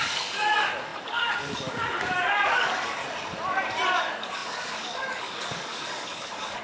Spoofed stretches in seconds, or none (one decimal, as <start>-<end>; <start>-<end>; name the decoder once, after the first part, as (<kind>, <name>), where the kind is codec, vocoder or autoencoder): 0.0-3.0 (codec, DAC); 4.0-6.6